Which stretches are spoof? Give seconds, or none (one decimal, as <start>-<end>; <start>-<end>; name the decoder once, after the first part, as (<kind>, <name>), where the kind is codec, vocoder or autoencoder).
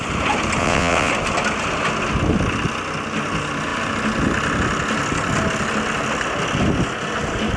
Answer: 0.6-1.1 (vocoder, WaveNeXt)